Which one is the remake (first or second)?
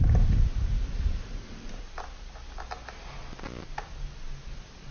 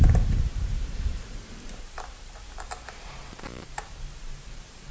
second